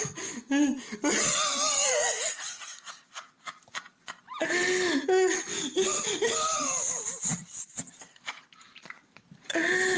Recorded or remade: recorded